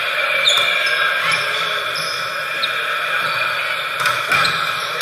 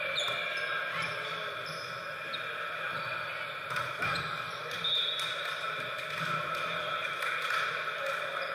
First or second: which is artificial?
first